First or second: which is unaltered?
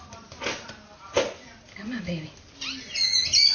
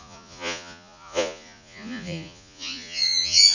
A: first